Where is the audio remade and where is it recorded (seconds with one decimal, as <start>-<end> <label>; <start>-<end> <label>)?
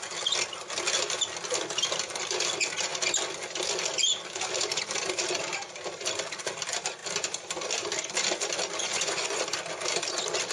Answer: 0.0-8.8 recorded; 8.8-9.4 remade; 9.4-10.5 recorded